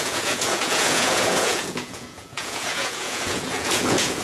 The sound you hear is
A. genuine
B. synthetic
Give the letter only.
B